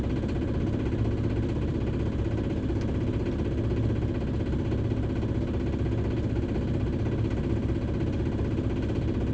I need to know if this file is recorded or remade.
recorded